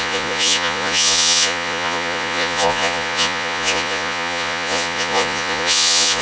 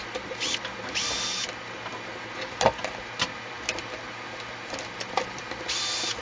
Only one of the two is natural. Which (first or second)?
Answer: second